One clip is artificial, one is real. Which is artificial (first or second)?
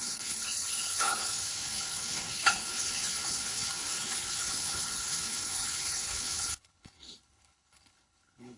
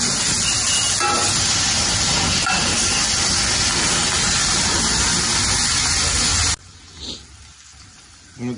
first